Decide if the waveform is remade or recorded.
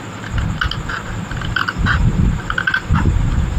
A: recorded